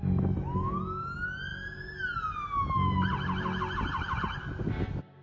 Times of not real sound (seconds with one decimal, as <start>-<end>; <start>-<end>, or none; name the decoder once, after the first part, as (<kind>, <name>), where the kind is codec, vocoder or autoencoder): none